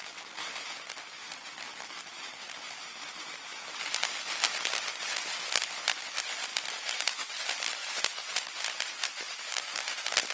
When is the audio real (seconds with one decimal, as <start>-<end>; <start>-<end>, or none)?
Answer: 3.9-6.5; 7.1-7.8; 8.5-9.0